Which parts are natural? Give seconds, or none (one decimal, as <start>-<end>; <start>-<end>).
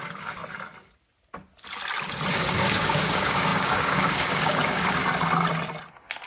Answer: 0.4-2.3; 5.0-6.3